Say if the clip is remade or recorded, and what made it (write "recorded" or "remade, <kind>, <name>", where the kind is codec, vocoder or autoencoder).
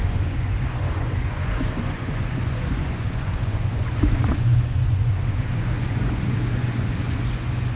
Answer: remade, vocoder, Vocos